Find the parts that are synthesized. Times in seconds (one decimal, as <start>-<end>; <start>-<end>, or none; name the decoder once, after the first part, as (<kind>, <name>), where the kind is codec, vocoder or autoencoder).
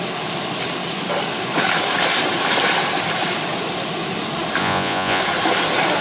4.6-5.2 (vocoder, Vocos)